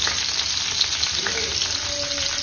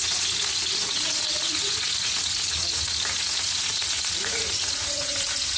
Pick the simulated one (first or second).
second